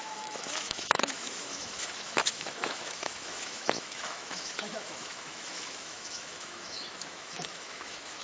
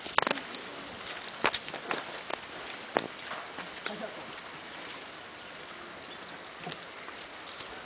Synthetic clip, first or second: first